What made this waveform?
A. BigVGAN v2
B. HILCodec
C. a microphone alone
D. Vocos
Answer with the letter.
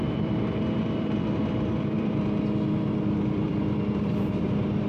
A